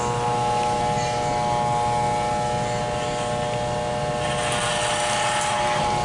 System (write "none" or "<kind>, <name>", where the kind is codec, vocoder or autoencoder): none